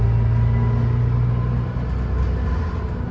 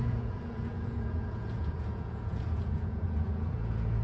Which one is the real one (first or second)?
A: first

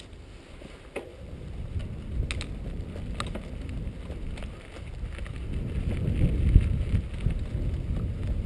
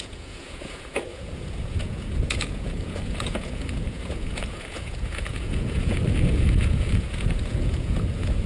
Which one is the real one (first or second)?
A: first